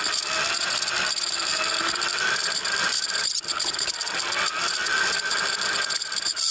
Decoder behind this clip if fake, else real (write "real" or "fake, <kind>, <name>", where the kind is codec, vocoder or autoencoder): real